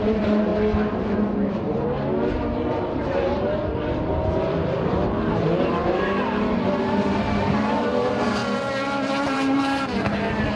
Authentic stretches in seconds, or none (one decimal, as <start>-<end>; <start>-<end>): 0.5-1.5; 8.4-9.3